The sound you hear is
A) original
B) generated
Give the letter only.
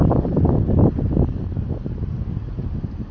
A